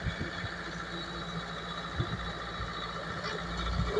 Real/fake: real